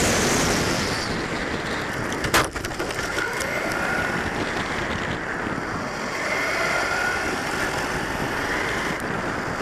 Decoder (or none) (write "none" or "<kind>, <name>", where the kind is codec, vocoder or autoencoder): none